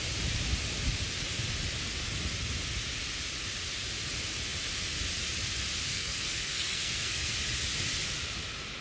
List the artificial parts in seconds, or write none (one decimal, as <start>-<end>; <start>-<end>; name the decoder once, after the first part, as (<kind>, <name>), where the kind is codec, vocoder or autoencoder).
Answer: 5.9-7.3 (codec, SNAC)